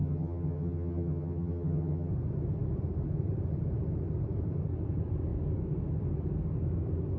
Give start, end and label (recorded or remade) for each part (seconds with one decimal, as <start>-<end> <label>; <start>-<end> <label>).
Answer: 0.0-2.1 remade; 2.1-7.2 recorded